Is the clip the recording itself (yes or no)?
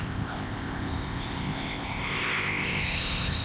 no